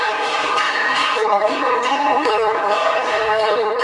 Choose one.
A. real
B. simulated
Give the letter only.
B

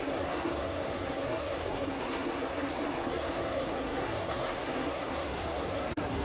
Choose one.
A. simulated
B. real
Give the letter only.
A